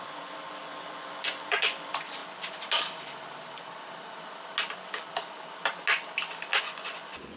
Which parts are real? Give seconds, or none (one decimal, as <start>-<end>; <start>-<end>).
2.2-6.6